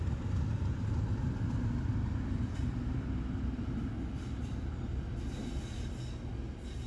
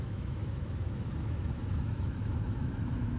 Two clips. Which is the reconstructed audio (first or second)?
second